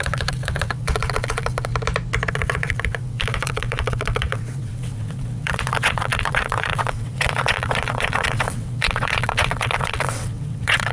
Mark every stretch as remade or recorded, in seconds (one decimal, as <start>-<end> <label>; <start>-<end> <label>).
0.0-1.7 remade; 1.7-2.3 recorded; 2.3-10.9 remade